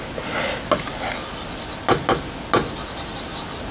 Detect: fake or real real